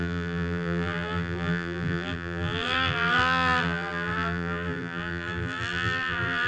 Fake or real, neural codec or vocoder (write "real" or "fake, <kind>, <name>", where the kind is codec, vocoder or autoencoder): fake, vocoder, BigVGAN v2